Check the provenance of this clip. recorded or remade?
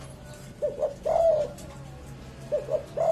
recorded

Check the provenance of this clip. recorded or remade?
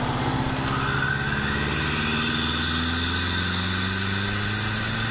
recorded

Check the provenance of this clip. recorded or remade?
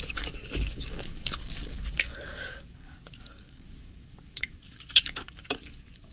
remade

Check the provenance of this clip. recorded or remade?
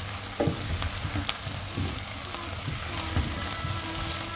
recorded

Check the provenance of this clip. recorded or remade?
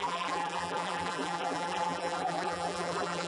remade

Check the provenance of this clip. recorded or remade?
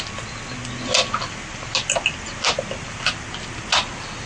recorded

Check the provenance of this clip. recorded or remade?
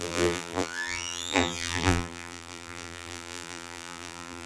remade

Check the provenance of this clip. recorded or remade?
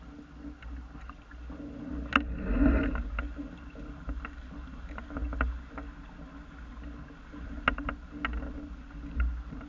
recorded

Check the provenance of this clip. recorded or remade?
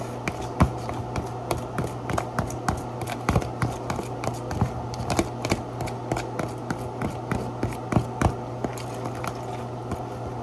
recorded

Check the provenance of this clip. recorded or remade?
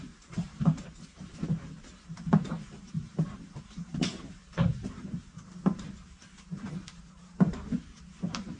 remade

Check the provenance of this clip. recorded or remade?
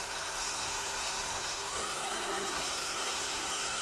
remade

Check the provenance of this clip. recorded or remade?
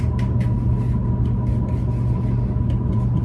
recorded